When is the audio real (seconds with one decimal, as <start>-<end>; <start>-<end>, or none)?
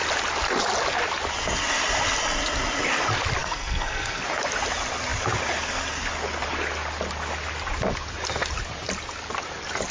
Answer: 0.0-3.4; 4.2-9.9